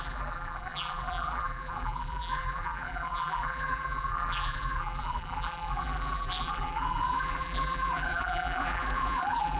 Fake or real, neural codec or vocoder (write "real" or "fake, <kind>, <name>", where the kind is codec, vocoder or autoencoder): fake, vocoder, BigVGAN v2